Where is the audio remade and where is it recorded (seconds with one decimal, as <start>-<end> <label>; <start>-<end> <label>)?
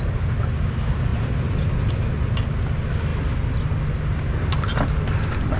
0.0-5.6 recorded